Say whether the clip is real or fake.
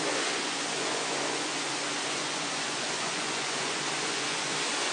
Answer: fake